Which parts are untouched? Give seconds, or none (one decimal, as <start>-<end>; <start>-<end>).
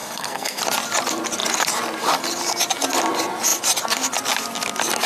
0.6-5.1